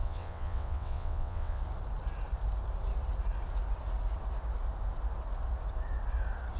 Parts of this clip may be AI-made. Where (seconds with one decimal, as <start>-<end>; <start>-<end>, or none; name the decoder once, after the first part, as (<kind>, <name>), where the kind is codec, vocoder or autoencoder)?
0.0-1.6 (vocoder, WaveNeXt)